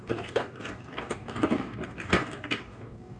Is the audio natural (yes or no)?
no